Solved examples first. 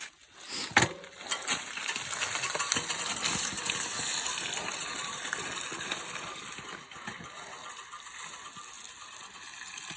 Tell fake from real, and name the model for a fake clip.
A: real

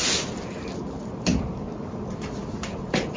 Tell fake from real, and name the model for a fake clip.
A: real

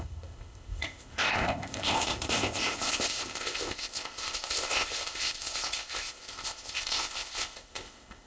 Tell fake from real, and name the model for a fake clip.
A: fake, codec, ZipCodec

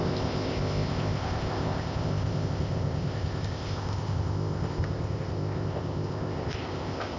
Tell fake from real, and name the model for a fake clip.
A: fake, codec, ZipCodec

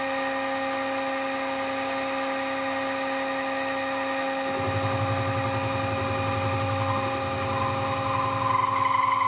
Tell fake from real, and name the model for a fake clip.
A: real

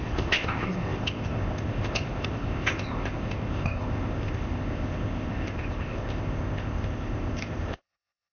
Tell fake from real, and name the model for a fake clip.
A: fake, codec, ZipCodec